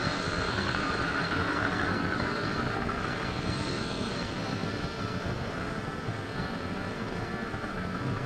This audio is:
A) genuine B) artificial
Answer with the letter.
B